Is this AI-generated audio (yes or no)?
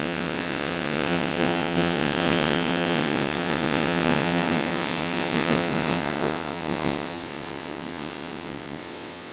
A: yes